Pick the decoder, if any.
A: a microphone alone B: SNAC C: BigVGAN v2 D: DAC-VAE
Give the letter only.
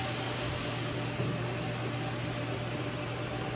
A